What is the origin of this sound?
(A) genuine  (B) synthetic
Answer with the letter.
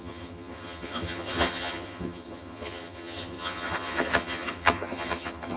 B